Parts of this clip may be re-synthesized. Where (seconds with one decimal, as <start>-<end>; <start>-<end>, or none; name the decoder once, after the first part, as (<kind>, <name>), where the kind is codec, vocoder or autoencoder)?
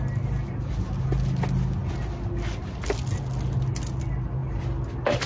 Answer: none